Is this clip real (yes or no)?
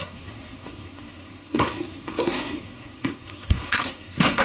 no